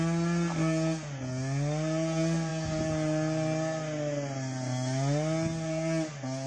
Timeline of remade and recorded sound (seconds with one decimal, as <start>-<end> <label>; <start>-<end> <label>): 0.0-6.5 recorded